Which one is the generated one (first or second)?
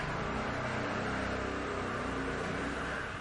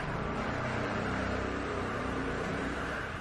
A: second